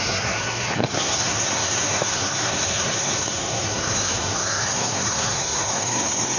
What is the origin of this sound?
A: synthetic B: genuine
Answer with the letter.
A